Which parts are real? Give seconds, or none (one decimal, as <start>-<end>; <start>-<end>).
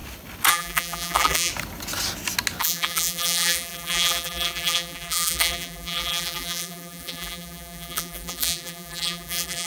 0.0-0.5; 1.5-2.6